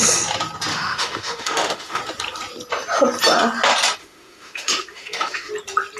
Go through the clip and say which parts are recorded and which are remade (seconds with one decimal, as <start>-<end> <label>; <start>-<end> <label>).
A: 0.0-0.7 recorded; 0.7-2.0 remade; 2.0-4.0 recorded; 4.0-5.5 remade; 5.5-6.0 recorded